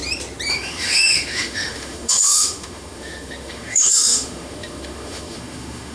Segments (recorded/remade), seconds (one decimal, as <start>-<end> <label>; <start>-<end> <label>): 0.0-0.5 recorded; 0.5-5.9 remade